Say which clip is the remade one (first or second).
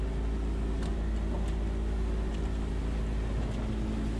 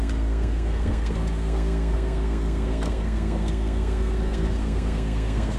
second